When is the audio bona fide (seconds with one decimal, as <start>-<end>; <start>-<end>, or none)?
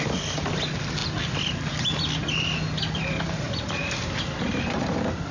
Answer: 0.0-5.3